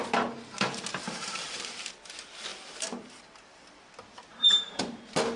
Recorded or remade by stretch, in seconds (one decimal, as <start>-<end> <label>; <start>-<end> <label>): 0.0-1.0 recorded; 1.0-1.9 remade; 1.9-2.5 recorded; 2.5-3.8 remade; 3.8-4.3 recorded; 4.3-4.8 remade; 4.8-5.4 recorded